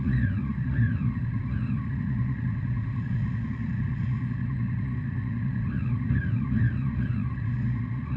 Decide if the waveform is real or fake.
fake